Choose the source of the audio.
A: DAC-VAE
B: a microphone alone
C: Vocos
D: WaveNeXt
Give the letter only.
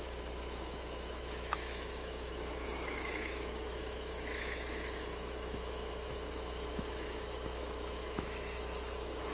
A